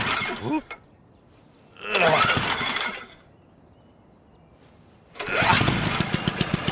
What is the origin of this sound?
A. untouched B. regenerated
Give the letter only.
A